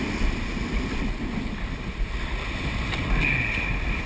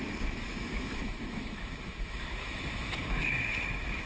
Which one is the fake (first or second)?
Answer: second